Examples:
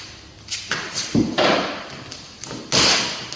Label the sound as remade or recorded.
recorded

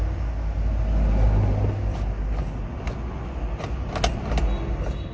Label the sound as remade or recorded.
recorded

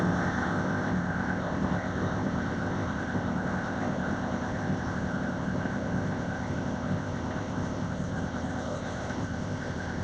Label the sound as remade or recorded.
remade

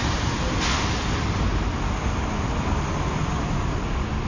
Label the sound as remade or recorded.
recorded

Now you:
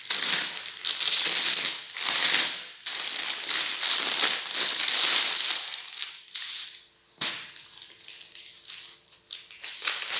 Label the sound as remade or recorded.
recorded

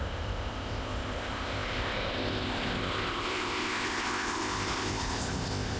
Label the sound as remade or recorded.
remade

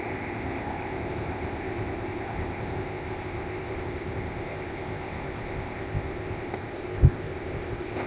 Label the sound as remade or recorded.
remade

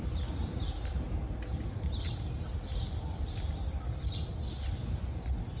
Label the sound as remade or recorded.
recorded